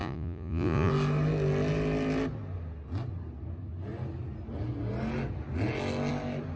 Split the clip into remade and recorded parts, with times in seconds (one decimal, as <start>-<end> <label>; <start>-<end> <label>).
0.0-0.9 remade; 0.9-6.6 recorded